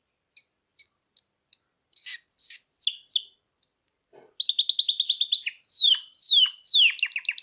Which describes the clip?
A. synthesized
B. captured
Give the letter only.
B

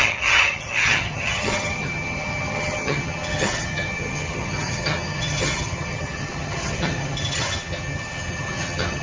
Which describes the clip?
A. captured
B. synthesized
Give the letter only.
B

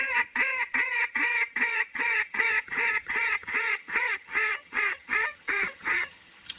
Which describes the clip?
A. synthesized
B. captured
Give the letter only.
A